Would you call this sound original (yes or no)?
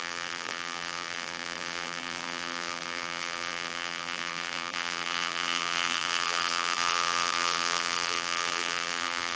no